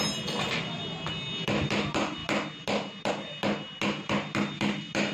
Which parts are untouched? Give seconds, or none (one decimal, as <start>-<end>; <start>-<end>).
0.0-5.1